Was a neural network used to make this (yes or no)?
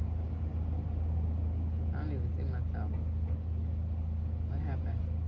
no